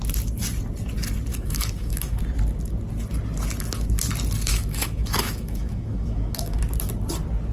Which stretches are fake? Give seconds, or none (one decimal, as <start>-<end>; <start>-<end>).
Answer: 1.3-2.2; 4.5-6.6